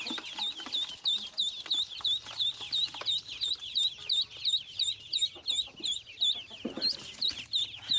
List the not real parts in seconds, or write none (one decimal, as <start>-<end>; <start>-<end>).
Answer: none